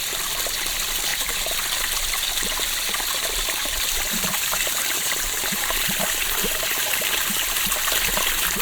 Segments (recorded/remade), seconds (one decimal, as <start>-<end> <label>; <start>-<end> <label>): 0.0-1.1 recorded; 1.1-1.8 remade; 1.8-3.6 recorded; 3.6-7.7 remade; 7.7-8.6 recorded